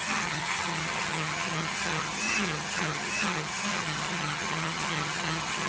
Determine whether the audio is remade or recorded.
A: remade